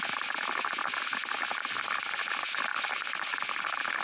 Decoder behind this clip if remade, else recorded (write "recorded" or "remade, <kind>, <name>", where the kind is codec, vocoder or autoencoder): recorded